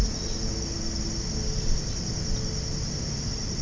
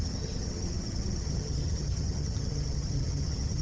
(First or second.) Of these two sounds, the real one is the first